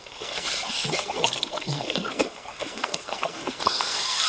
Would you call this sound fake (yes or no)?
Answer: yes